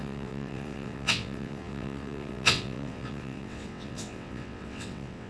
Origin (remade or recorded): remade